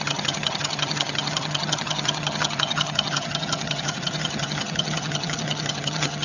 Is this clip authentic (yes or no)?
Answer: no